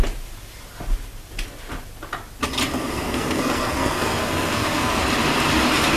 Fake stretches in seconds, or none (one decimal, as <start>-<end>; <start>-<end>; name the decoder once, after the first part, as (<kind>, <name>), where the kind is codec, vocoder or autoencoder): 2.8-5.0 (codec, SNAC)